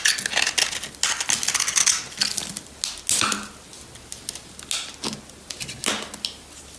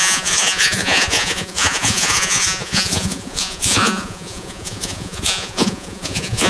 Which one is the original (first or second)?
first